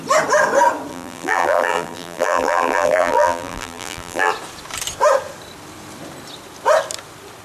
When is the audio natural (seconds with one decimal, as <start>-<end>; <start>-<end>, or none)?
0.0-0.9; 4.3-7.4